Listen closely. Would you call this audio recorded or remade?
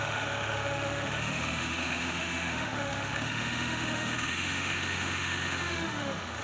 remade